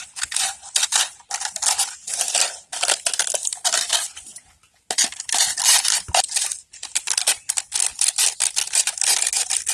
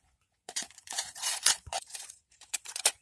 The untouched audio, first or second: first